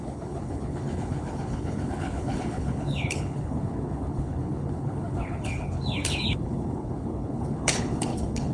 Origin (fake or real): fake